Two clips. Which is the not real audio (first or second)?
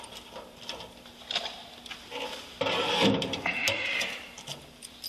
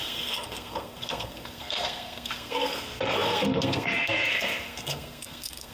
second